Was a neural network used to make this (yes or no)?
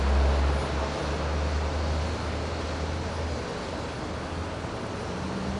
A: no